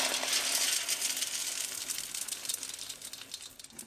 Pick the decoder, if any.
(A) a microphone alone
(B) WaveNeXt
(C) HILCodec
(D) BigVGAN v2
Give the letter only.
A